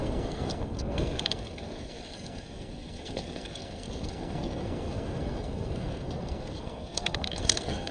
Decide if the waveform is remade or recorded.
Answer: remade